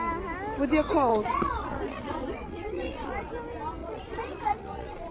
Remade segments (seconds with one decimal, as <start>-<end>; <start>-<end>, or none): 1.1-3.3; 3.8-5.1